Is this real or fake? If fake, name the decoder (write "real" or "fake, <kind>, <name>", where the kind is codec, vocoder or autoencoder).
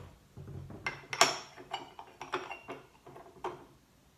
real